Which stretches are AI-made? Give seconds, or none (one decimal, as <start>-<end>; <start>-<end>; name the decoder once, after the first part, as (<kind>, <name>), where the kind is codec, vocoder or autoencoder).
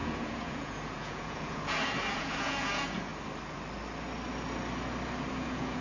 0.0-3.1 (vocoder, Vocos); 5.3-5.8